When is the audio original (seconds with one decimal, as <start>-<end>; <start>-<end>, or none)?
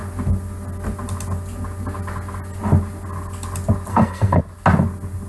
0.0-3.9; 4.4-5.3